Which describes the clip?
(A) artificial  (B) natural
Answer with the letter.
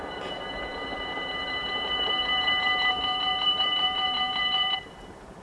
A